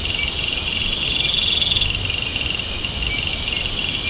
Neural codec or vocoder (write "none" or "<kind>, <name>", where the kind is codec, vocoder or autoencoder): none